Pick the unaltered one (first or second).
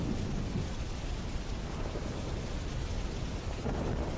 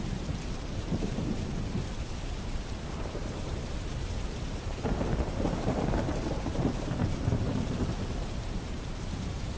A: first